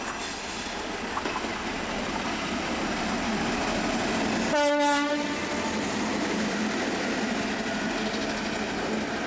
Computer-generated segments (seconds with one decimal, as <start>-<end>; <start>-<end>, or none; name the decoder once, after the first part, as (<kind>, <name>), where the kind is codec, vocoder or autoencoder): 1.5-3.3 (vocoder, BigVGAN v2)